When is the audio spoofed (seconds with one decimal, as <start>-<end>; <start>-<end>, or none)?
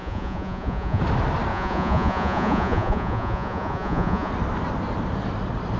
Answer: 0.0-1.0; 1.5-4.3